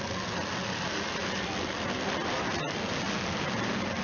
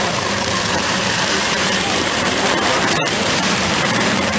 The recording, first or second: first